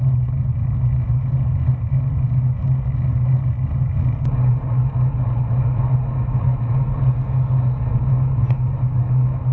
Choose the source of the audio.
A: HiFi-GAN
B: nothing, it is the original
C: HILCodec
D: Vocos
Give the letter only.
B